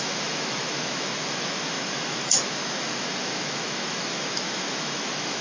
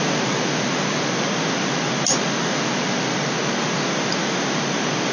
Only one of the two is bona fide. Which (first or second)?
second